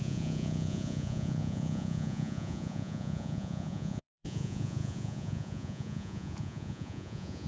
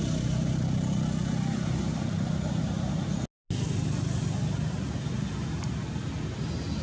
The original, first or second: second